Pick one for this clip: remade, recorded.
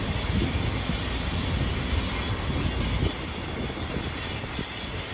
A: recorded